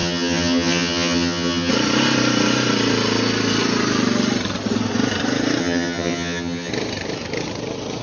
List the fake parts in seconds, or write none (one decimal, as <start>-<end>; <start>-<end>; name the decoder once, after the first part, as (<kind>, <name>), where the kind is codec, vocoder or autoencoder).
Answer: 0.0-1.7 (vocoder, HiFi-GAN); 5.6-6.7